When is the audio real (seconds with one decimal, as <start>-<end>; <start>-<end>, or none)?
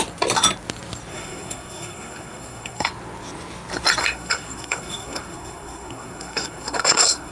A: 0.0-1.1; 2.9-4.0